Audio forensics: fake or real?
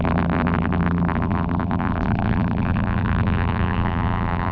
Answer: fake